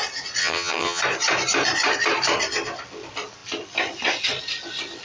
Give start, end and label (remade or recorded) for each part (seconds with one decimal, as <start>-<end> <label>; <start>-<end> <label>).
0.0-0.4 recorded; 0.4-1.0 remade; 1.0-5.0 recorded